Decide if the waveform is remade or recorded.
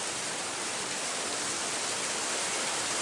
recorded